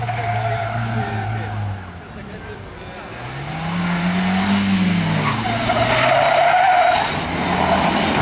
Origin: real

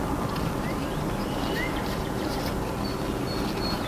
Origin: real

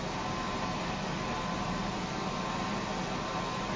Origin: real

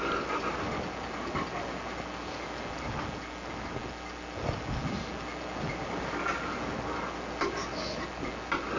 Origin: real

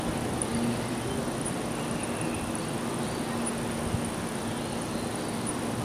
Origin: real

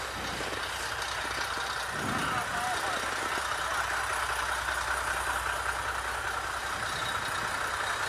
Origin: real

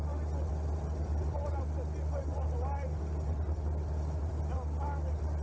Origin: real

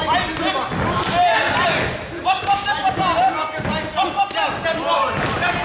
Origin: real